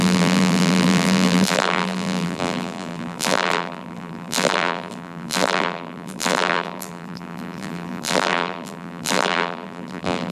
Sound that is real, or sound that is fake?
fake